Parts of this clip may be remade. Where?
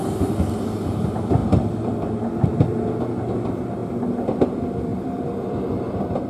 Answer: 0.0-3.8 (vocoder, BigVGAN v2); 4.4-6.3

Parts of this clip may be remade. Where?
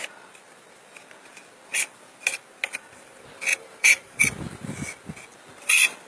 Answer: 3.5-4.2 (vocoder, BigVGAN v2)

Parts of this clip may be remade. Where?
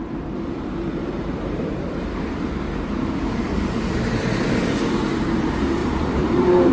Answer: 1.0-2.2 (vocoder, BigVGAN v2); 5.8-6.7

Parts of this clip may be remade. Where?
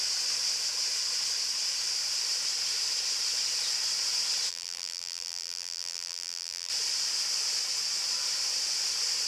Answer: 4.5-6.7 (vocoder, BigVGAN v2)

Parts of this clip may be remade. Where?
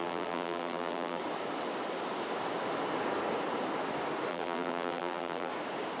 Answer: 0.0-1.2 (vocoder, BigVGAN v2); 4.3-5.5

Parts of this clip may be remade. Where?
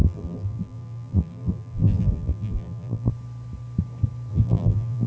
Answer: 0.0-3.1 (vocoder, BigVGAN v2); 4.3-5.1